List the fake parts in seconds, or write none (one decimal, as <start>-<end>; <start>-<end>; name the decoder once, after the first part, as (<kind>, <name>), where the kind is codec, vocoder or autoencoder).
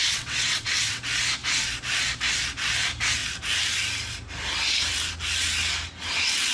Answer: 0.0-1.0 (vocoder, WaveNeXt)